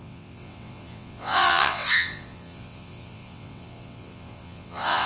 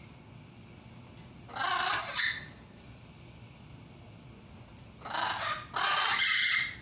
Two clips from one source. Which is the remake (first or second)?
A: first